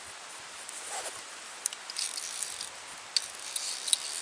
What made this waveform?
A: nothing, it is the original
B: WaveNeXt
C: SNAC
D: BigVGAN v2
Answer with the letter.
A